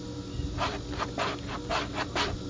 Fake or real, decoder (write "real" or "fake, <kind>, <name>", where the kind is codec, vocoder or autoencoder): real